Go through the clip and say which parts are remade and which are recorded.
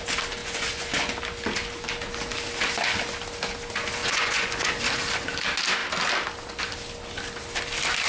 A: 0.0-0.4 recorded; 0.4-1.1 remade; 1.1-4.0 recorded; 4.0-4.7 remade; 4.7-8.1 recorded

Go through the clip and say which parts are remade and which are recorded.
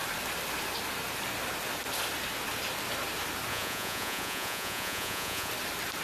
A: 0.0-3.5 recorded; 3.5-5.5 remade; 5.5-6.0 recorded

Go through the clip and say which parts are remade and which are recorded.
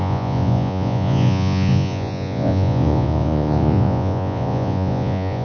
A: 0.0-5.4 remade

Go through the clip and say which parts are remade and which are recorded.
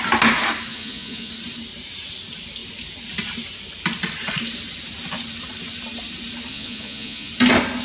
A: 0.0-0.7 recorded; 0.7-1.3 remade; 1.3-6.5 recorded; 6.5-7.3 remade; 7.3-7.8 recorded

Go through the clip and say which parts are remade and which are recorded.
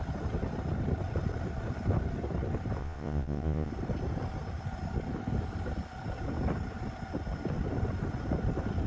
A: 0.0-2.8 recorded; 2.8-3.7 remade; 3.7-8.9 recorded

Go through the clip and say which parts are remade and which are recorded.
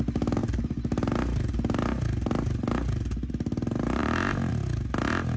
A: 0.0-5.4 recorded